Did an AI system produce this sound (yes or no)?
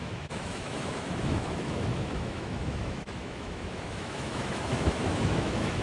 yes